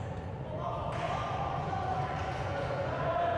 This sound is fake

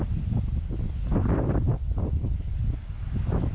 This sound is real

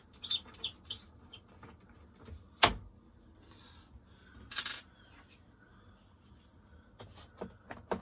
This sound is real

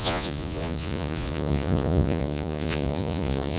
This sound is fake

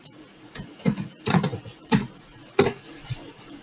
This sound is fake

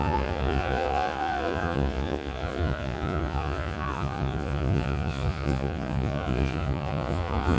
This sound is fake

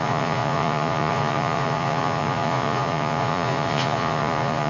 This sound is fake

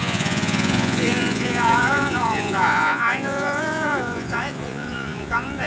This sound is fake